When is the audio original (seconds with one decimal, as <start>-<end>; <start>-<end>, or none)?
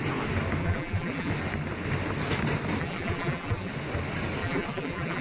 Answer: 0.0-0.6; 1.3-2.8; 3.7-4.4